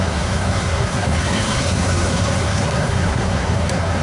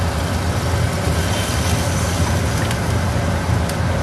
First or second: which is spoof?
first